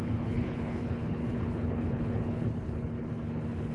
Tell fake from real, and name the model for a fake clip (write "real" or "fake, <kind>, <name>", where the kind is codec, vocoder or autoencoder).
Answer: fake, codec, HILCodec